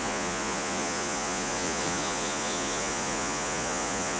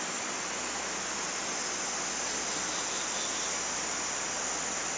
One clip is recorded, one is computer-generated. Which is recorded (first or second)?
second